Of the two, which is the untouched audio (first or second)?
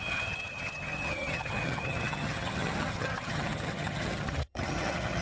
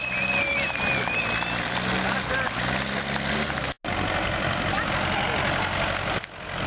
second